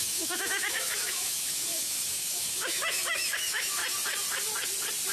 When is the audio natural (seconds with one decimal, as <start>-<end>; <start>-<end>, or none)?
3.8-5.1